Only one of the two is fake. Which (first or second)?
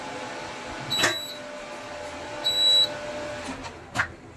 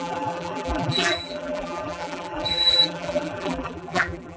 second